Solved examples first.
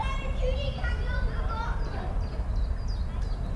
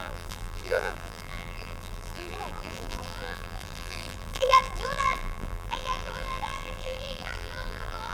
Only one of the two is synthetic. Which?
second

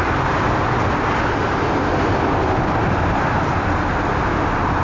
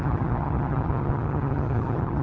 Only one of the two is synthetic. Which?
second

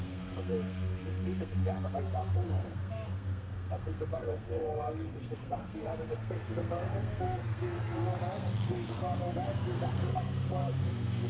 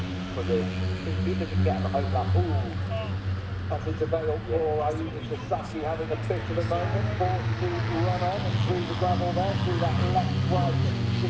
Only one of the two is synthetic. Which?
first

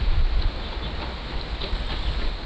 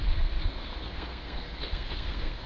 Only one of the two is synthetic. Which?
second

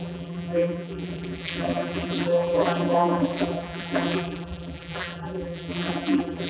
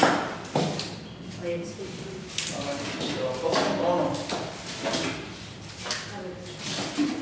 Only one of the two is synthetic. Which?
first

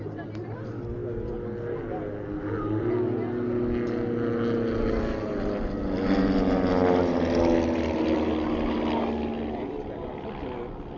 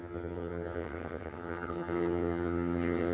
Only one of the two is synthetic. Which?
second